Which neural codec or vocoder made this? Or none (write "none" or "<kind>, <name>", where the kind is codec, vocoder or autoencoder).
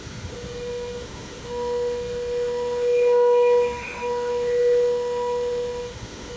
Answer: autoencoder, DAC-VAE